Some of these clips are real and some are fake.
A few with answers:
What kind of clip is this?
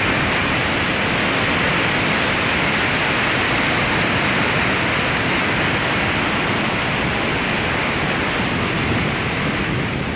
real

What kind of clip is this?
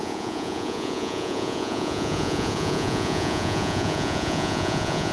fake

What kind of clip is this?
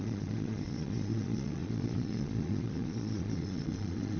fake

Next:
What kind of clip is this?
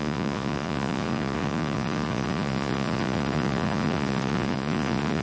fake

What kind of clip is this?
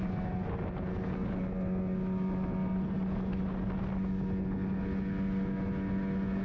real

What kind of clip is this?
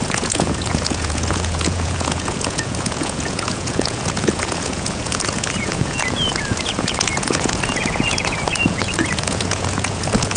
fake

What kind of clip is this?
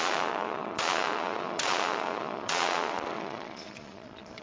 fake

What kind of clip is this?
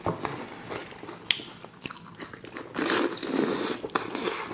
real